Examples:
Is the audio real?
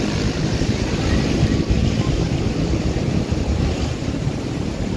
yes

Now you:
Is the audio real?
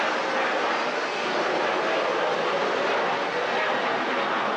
yes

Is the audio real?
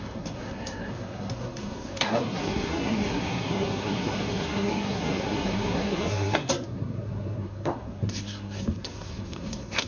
no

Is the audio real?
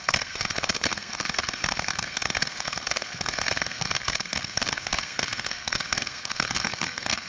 no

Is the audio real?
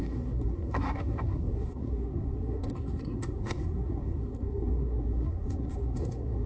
no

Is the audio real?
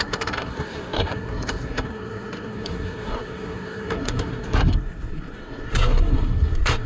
no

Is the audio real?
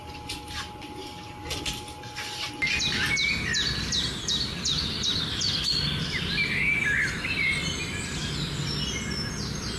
yes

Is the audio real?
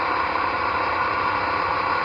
yes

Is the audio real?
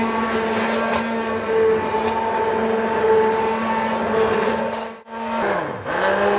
yes